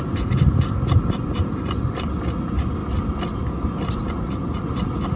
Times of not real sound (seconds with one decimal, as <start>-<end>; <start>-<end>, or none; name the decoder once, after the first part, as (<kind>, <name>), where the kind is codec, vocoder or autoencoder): none